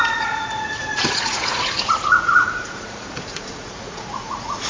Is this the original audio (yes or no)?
no